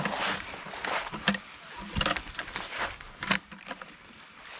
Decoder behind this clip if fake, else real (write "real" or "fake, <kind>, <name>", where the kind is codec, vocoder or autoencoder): real